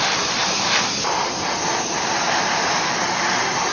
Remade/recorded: recorded